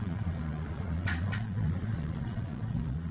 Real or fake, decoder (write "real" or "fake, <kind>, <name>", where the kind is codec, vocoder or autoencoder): fake, vocoder, Vocos